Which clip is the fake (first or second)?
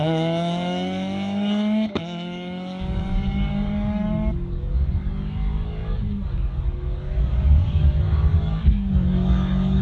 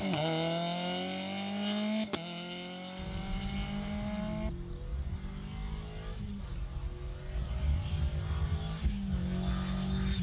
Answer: first